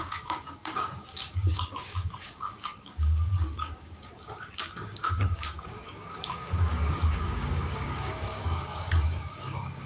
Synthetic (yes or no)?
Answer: yes